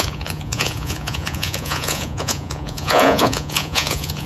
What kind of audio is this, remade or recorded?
remade